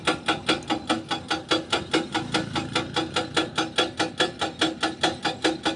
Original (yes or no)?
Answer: yes